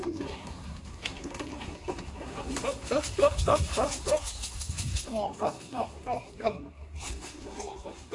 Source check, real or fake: fake